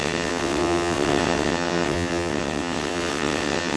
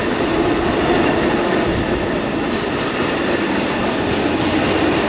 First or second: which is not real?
first